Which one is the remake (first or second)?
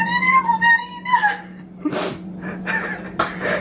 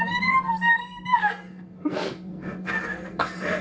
second